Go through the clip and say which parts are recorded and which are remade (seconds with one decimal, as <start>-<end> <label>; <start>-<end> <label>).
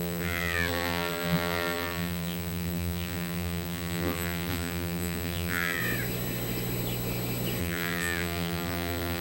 0.0-5.8 remade; 5.8-7.6 recorded; 7.6-9.2 remade